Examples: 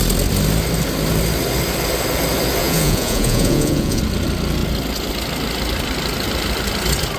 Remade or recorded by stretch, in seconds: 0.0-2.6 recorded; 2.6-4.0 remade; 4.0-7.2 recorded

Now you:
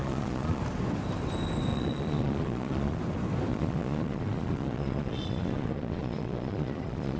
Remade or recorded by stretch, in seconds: 0.0-0.6 remade; 0.6-1.7 recorded; 1.7-3.0 remade; 3.0-3.5 recorded; 3.5-7.2 remade